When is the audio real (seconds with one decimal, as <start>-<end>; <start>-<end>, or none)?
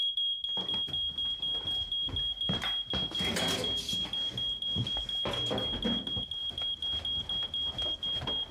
0.0-8.5